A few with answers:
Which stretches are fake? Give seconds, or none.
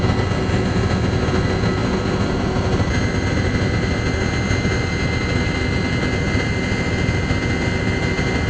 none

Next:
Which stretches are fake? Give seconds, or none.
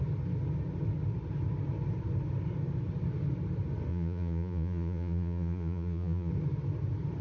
3.9-6.3 (vocoder, Vocos)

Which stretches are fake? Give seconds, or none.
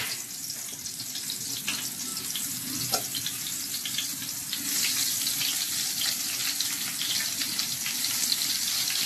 none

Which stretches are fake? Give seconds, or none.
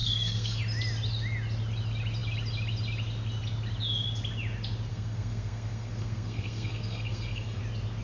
0.0-0.6 (codec, SNAC); 4.9-7.6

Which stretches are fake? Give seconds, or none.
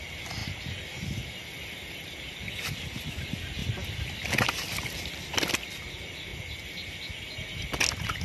3.6-5.5 (vocoder, BigVGAN v2); 6.3-7.0